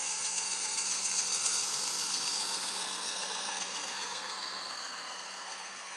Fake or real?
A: fake